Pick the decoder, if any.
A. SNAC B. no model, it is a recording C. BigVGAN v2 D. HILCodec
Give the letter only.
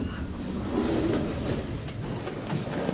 B